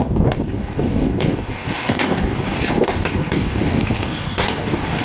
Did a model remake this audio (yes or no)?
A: yes